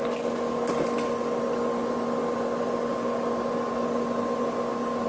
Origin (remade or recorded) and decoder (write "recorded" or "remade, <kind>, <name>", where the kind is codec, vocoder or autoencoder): recorded